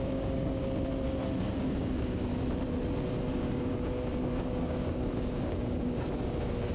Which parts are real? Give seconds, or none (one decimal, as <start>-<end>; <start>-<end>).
0.6-1.4; 2.3-3.3